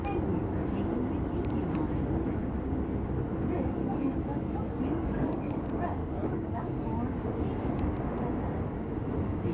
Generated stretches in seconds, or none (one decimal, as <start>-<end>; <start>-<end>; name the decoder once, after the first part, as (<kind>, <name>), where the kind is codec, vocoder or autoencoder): 3.8-5.6 (codec, DAC); 6.0-6.6